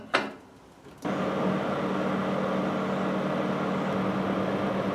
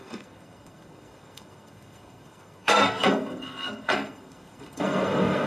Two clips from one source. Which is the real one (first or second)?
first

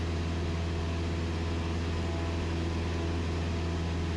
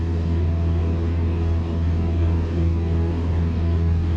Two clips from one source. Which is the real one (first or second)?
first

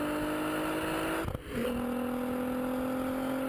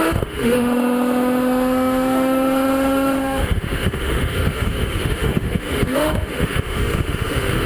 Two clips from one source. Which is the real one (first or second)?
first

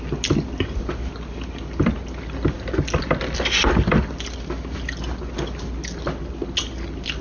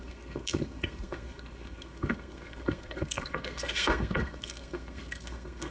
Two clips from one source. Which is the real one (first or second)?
first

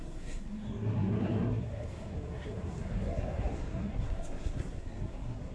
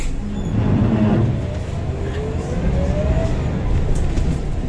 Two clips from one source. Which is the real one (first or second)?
second